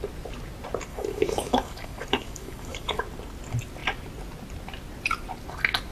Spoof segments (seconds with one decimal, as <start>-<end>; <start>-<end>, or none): 0.9-3.0